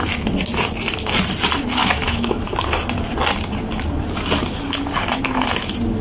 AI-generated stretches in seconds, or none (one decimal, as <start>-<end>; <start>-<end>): 1.8-2.4